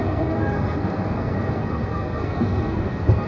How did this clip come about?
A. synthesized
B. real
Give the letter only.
A